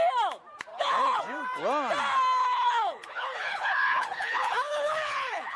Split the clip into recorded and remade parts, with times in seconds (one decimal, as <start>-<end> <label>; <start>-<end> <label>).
0.0-0.7 recorded; 0.7-1.2 remade; 1.2-2.4 recorded; 2.4-5.6 remade